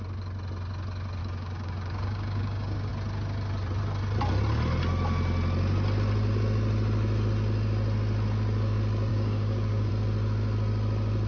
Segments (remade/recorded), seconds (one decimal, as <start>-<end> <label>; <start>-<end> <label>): 0.0-1.2 recorded; 1.2-2.9 remade; 2.9-9.1 recorded; 9.1-9.9 remade; 9.9-11.3 recorded